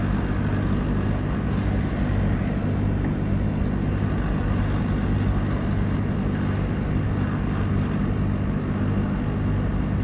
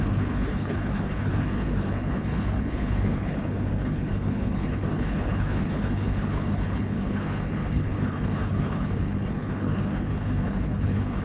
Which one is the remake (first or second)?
second